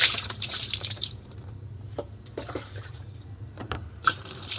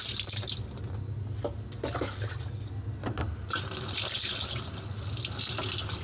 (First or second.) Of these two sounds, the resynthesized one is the first